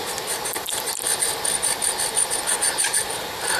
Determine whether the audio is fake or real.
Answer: real